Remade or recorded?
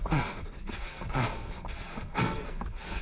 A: remade